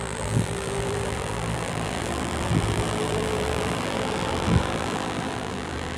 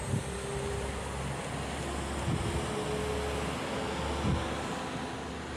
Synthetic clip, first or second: first